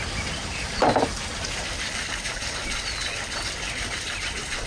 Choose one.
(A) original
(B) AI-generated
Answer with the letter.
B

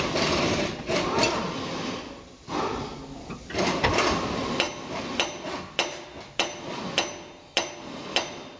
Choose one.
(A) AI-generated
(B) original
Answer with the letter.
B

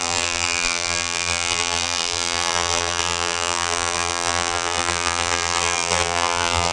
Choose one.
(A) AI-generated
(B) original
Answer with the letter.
A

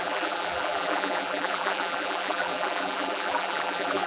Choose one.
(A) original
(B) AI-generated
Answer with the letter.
B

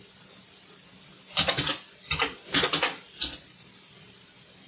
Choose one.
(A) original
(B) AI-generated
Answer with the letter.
A